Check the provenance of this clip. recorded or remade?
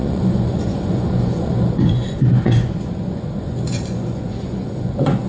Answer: remade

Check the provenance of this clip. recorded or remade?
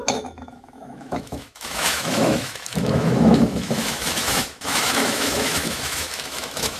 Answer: remade